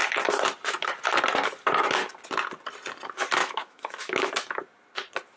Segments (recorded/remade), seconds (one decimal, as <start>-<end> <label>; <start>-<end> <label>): 0.0-3.4 recorded; 3.4-4.3 remade; 4.3-5.4 recorded